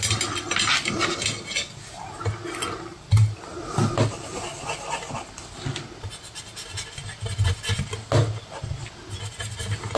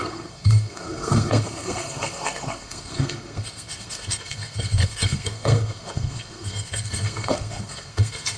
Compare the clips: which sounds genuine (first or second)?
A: first